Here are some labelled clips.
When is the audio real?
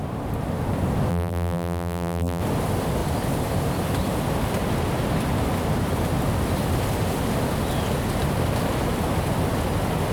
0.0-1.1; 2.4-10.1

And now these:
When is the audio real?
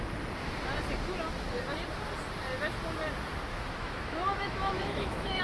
0.0-3.5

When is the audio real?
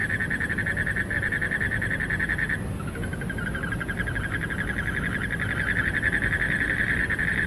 0.0-2.7; 3.1-7.5